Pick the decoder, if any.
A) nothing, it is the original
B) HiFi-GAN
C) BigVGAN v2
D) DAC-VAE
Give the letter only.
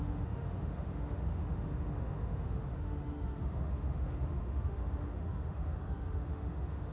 D